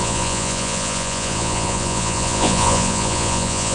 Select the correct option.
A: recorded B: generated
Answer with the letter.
B